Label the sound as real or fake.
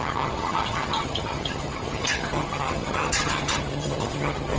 fake